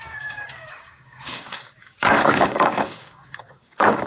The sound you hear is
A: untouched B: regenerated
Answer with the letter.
B